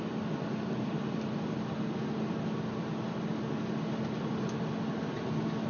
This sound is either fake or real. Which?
real